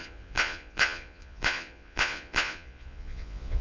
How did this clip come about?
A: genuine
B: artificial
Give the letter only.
B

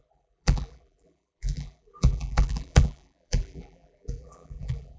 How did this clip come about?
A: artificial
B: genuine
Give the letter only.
A